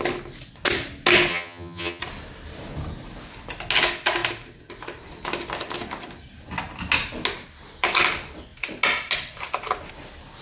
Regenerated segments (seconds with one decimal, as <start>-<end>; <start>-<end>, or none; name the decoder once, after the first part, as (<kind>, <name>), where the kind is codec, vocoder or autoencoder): 1.3-2.0 (vocoder, HiFi-GAN)